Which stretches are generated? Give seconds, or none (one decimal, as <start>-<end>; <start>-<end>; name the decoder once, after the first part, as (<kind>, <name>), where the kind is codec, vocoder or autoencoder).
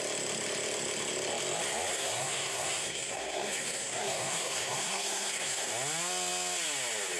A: 1.9-5.7 (codec, SNAC)